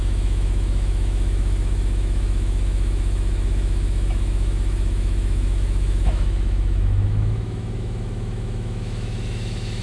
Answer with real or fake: fake